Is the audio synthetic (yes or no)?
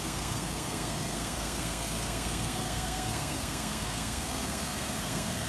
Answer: yes